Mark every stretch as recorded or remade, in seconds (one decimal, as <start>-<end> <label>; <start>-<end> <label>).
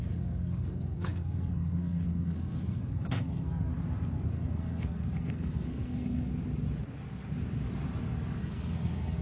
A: 0.0-3.7 remade; 3.7-4.3 recorded; 4.3-6.3 remade; 6.3-8.4 recorded; 8.4-9.2 remade